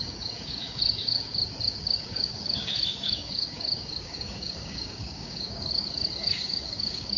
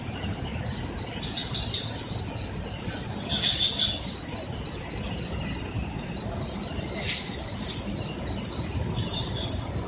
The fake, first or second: first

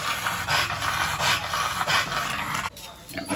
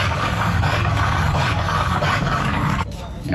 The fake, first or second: second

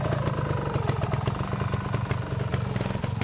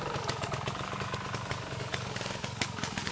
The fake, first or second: second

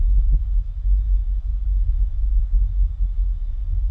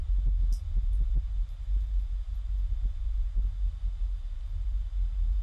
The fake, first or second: first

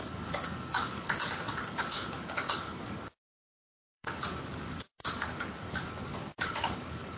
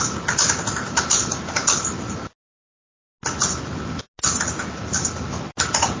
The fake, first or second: first